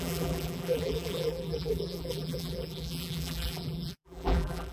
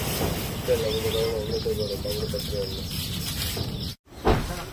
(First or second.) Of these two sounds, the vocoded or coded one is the first